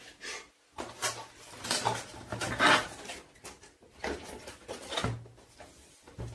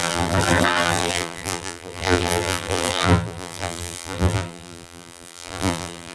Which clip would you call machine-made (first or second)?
second